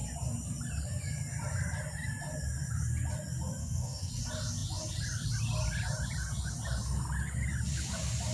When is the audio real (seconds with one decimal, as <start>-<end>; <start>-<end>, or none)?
0.0-3.6; 4.1-8.3